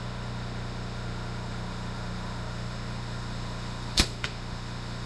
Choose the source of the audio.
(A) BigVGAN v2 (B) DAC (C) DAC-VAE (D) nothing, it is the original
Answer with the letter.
C